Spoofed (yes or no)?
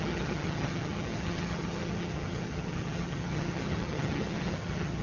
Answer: yes